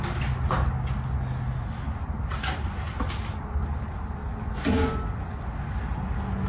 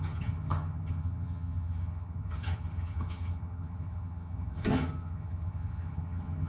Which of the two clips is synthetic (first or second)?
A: second